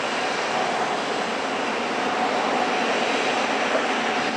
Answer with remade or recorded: recorded